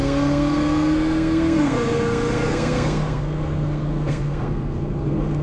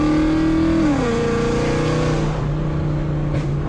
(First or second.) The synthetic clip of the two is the first